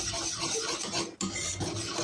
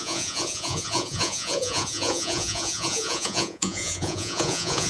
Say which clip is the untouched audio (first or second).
first